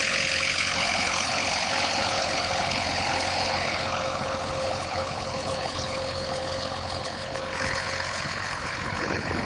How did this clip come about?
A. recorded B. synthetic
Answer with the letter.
B